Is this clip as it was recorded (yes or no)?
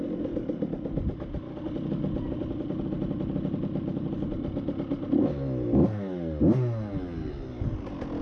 yes